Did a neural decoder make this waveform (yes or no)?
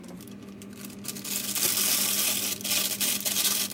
no